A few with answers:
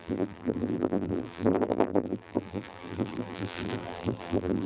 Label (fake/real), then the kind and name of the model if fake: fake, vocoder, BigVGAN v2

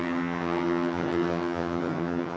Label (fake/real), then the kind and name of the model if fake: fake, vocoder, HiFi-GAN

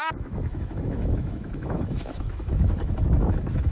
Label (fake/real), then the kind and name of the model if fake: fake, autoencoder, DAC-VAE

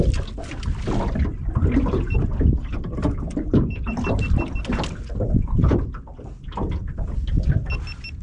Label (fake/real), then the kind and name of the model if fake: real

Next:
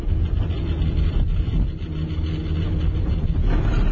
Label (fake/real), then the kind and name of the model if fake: real